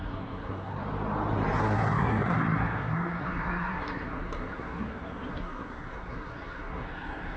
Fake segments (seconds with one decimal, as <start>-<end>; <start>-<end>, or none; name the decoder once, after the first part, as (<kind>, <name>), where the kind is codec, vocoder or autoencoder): 0.0-0.8 (codec, SNAC); 1.6-7.4